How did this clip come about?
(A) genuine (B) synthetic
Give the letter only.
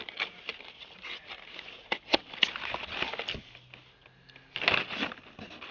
A